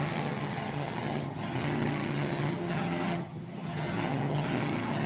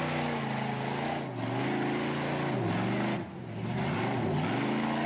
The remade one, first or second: first